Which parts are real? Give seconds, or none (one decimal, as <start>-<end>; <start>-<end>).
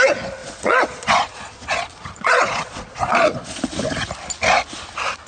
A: 0.0-0.4; 3.6-5.3